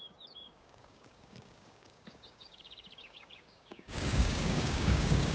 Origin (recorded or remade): remade